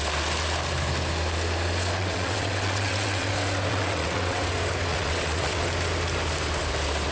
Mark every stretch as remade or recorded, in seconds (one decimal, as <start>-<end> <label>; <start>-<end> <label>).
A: 0.0-2.0 recorded; 2.0-3.3 remade; 3.3-3.7 recorded; 3.7-4.4 remade; 4.4-4.9 recorded; 4.9-5.6 remade; 5.6-7.1 recorded